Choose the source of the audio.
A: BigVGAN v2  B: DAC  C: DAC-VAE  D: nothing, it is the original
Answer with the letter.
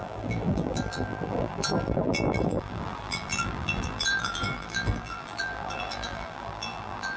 A